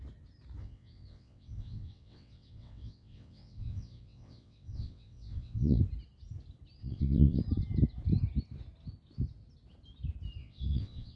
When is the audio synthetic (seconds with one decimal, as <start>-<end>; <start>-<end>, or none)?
0.6-5.8; 6.8-7.4; 10.4-11.2